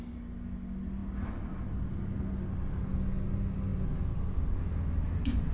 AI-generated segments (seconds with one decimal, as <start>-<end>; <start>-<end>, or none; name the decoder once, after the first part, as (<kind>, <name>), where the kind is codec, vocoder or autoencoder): none